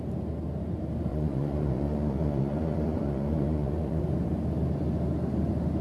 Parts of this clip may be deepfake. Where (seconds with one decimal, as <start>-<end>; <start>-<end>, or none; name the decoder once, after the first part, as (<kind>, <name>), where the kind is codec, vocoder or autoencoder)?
1.1-4.0 (vocoder, Vocos)